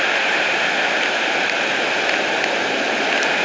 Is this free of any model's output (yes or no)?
yes